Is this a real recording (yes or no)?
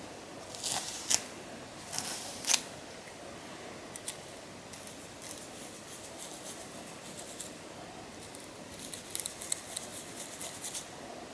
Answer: yes